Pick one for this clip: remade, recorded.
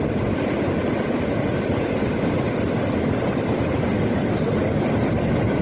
recorded